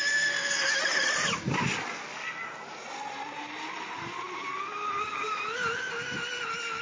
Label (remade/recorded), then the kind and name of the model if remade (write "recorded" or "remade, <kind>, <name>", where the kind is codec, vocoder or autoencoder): recorded